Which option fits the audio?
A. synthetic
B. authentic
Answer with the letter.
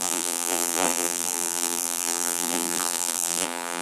A